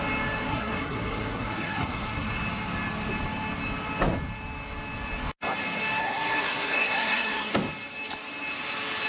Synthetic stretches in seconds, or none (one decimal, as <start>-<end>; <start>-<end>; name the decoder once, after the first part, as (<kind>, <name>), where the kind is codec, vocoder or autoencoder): 0.5-2.3 (codec, SNAC); 6.0-7.5